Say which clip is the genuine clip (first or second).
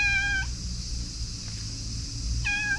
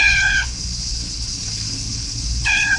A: first